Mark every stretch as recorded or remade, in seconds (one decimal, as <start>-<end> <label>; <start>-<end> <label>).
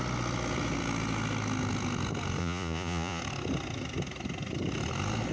0.0-2.4 recorded; 2.4-3.2 remade; 3.2-5.3 recorded